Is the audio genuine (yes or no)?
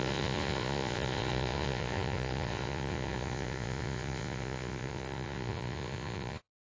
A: no